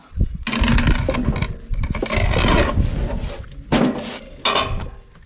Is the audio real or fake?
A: real